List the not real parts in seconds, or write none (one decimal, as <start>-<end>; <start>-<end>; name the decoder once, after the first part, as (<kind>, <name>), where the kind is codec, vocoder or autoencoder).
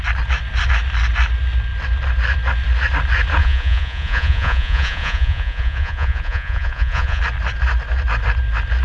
3.4-7.2 (vocoder, Vocos)